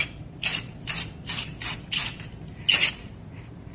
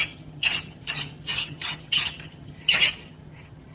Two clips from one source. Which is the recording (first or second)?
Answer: first